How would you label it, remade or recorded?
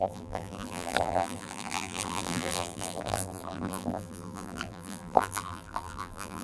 remade